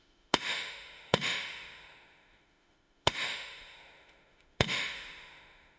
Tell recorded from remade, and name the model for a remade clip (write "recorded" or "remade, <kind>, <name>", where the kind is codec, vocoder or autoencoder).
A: remade, autoencoder, DAC-VAE